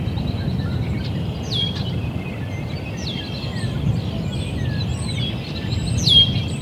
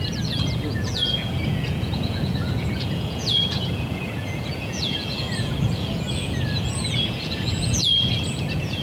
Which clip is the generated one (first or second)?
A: second